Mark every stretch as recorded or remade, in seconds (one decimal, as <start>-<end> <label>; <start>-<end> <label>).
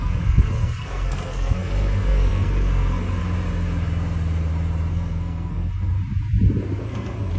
0.0-3.2 remade; 3.2-4.9 recorded; 4.9-5.9 remade; 5.9-6.8 recorded; 6.8-7.4 remade